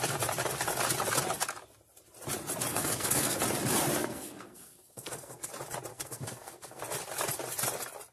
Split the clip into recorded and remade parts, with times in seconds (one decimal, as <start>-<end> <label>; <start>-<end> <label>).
0.0-2.7 recorded; 2.7-3.4 remade; 3.4-4.0 recorded; 4.0-5.5 remade; 5.5-5.9 recorded; 5.9-6.8 remade; 6.8-8.1 recorded